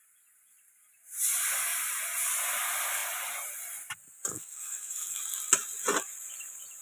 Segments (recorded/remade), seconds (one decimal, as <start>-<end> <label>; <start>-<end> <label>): 0.0-4.3 recorded; 4.3-5.2 remade; 5.2-6.8 recorded